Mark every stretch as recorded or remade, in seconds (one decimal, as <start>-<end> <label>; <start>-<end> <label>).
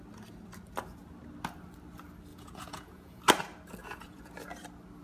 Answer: 0.0-2.3 recorded; 2.3-3.2 remade; 3.2-3.8 recorded; 3.8-4.3 remade; 4.3-5.0 recorded